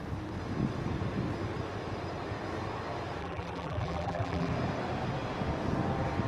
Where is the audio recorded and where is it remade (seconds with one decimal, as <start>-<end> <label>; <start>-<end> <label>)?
0.0-3.2 recorded; 3.2-4.5 remade; 4.5-6.3 recorded